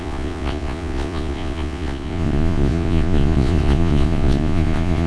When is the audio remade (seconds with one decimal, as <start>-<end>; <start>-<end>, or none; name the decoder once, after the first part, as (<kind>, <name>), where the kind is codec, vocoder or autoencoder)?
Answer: 0.0-5.1 (vocoder, Vocos)